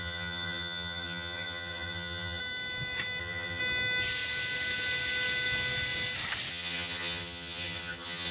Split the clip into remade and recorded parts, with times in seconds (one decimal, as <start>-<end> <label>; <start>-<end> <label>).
0.0-2.4 remade; 2.4-3.2 recorded; 3.2-3.6 remade; 3.6-6.5 recorded; 6.5-8.3 remade